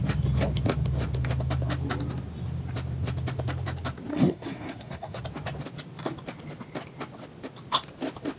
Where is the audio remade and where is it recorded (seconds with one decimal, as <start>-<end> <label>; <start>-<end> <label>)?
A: 0.0-4.1 recorded; 4.1-5.2 remade; 5.2-8.4 recorded